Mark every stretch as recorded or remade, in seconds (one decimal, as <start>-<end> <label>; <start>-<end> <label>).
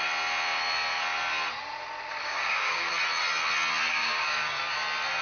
0.0-2.2 recorded; 2.2-2.9 remade; 2.9-3.9 recorded; 3.9-4.6 remade; 4.6-5.2 recorded